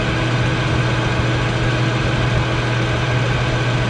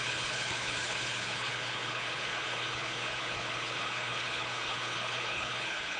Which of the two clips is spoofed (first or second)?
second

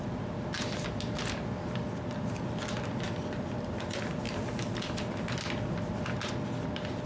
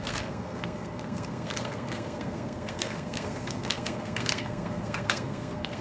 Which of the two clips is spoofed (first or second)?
second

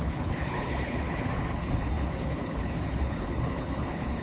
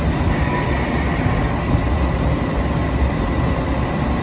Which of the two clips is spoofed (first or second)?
first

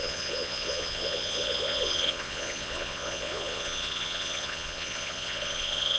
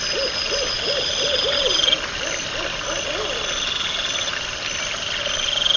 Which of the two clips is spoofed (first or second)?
first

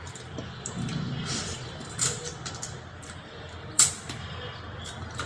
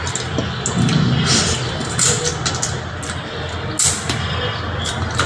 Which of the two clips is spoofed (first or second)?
first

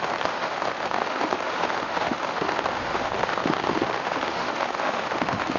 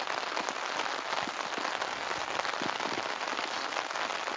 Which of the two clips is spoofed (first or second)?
first